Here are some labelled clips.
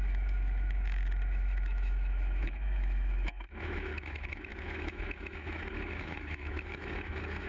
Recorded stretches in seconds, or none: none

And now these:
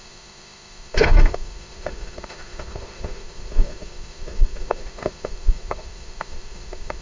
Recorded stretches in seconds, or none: none